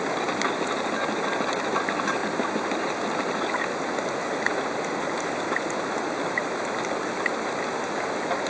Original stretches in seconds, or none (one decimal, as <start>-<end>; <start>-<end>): 0.0-8.5